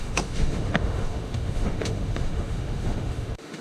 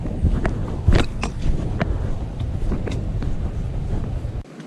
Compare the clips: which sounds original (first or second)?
second